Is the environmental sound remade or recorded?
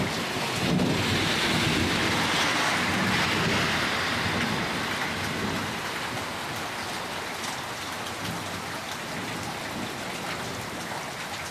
recorded